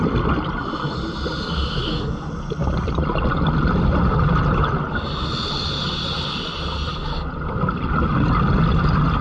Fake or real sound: real